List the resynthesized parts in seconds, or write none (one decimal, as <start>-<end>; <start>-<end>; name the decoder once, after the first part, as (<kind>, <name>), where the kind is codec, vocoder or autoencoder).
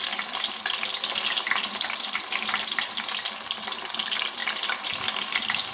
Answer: none